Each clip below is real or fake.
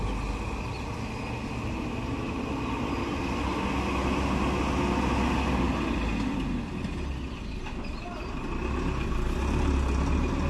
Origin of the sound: real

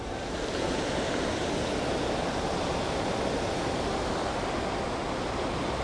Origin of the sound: real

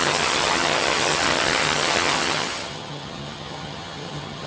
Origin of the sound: fake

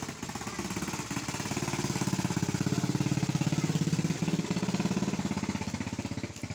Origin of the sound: real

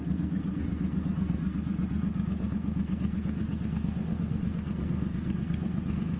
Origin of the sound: fake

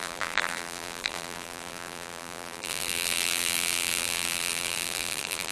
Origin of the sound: fake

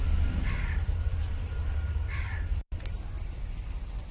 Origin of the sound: fake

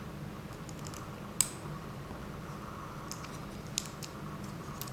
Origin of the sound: real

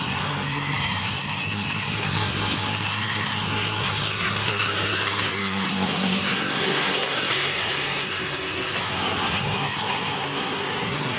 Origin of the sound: fake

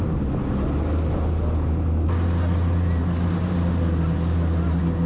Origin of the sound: real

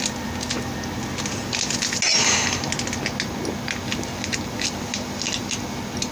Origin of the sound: real